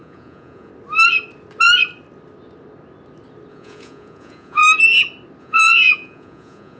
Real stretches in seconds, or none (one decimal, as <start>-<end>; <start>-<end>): 0.7-3.5; 4.6-5.4